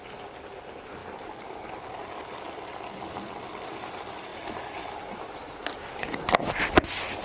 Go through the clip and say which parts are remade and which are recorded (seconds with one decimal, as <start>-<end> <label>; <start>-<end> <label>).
0.0-7.2 recorded